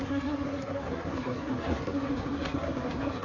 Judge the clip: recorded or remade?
remade